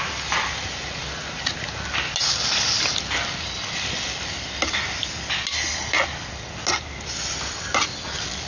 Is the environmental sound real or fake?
real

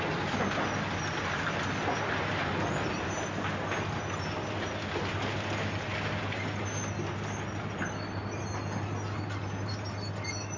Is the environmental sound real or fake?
real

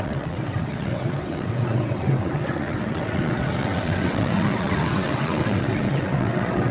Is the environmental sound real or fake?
fake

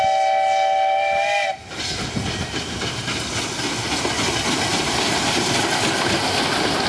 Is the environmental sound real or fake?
real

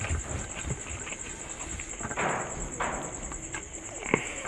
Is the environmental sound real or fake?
real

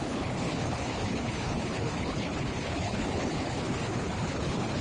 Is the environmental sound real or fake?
fake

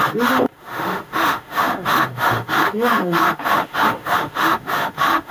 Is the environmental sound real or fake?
fake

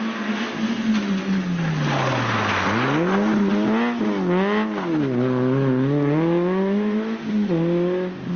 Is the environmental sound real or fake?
real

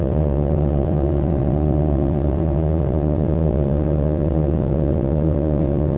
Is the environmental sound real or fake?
fake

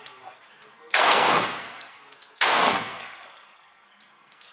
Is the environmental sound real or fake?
fake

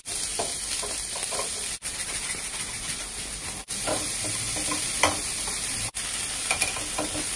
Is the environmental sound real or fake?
fake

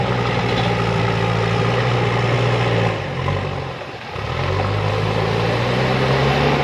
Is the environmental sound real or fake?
fake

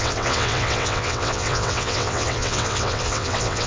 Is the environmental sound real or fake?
fake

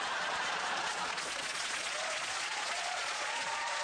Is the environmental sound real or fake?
fake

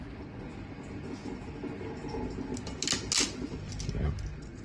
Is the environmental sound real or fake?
real